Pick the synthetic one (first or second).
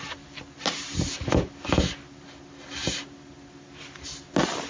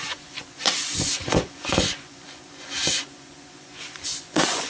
second